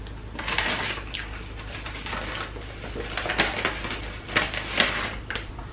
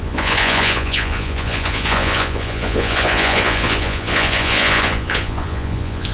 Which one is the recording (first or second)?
first